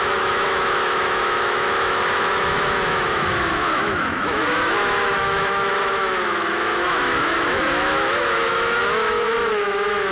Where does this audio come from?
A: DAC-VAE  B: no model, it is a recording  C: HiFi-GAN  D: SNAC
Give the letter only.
A